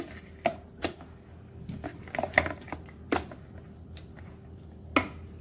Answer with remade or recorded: recorded